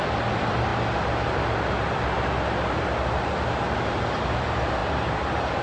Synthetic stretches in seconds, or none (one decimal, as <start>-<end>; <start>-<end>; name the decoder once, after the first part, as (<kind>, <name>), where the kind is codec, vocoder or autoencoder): none